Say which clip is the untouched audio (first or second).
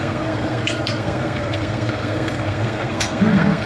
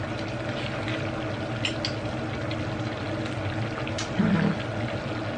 second